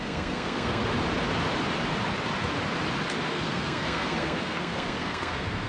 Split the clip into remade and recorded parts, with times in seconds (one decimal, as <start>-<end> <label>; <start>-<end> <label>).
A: 0.0-0.8 remade; 0.8-3.3 recorded; 3.3-5.7 remade